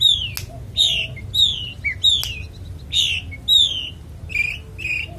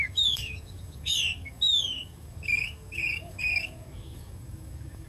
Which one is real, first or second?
first